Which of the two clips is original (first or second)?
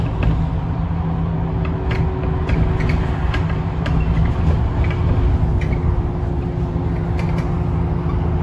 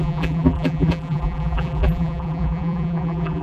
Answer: first